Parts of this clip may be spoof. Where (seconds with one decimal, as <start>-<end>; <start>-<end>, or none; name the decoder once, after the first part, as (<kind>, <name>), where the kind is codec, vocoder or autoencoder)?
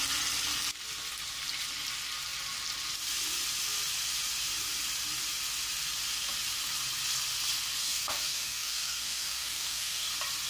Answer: 7.8-10.1 (codec, DAC)